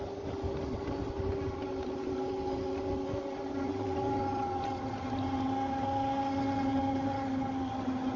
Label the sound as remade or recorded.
recorded